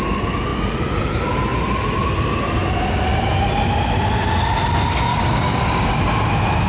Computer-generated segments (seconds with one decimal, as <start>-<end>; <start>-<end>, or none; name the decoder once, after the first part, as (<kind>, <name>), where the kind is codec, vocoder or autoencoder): 5.1-6.0 (codec, DAC)